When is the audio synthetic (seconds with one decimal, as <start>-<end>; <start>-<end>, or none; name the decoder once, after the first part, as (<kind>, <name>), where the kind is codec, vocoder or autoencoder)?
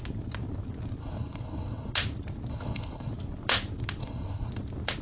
1.0-1.9 (codec, HILCodec); 2.5-3.1; 4.0-4.5